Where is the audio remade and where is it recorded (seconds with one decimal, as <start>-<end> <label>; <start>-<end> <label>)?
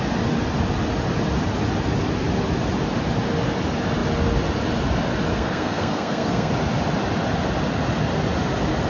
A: 0.0-5.3 recorded; 5.3-6.5 remade; 6.5-8.9 recorded